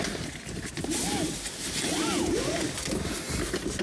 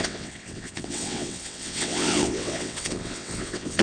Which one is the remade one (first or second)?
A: second